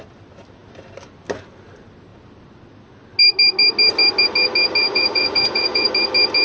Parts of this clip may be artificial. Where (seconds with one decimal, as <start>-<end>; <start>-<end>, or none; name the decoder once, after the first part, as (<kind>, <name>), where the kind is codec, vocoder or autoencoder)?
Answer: 4.8-5.9 (vocoder, Vocos)